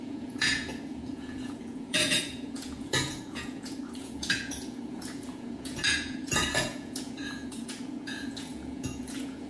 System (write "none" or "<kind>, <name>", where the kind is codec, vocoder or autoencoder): vocoder, Vocos